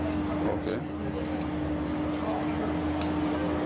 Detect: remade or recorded recorded